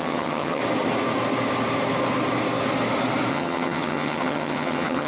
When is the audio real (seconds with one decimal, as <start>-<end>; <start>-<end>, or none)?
0.6-3.3